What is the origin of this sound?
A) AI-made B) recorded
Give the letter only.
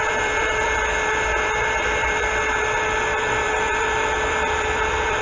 A